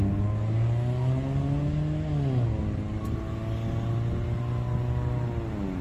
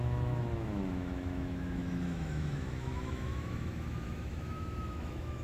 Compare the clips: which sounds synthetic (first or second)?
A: second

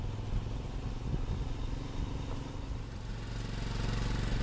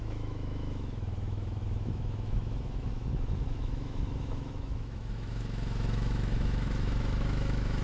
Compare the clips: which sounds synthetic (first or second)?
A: second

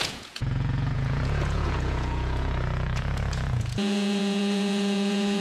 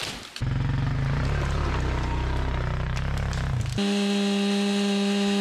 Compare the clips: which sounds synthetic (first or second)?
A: first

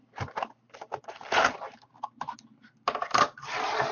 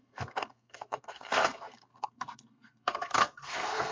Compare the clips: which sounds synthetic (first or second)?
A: second